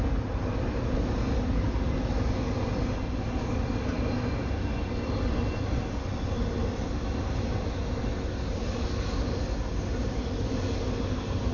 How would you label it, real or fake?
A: real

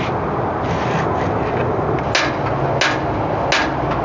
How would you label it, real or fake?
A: real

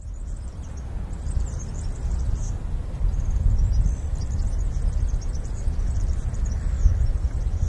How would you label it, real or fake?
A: real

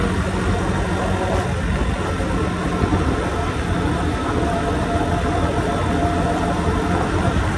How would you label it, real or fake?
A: real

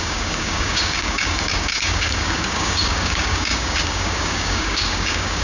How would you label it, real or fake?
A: fake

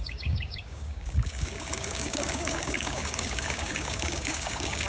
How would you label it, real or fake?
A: fake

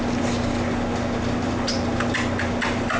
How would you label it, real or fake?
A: real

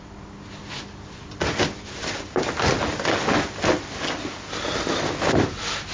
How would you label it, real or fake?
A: real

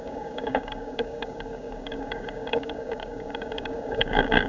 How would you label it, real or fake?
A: fake